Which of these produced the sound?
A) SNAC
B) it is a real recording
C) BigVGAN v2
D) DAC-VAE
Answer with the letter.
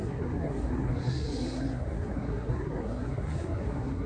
A